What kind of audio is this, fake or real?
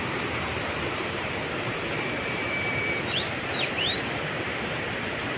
fake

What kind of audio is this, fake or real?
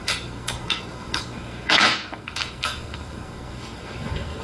fake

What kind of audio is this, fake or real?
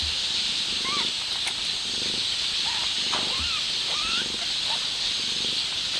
real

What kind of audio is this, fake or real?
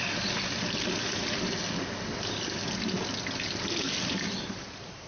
real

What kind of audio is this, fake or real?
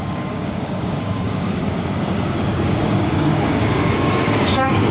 fake